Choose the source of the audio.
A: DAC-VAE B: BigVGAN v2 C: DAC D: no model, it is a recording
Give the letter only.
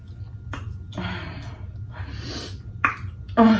D